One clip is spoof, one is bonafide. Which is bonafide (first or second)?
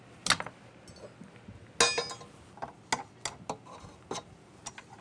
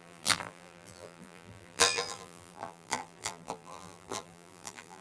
first